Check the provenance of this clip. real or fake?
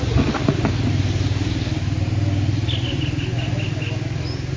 real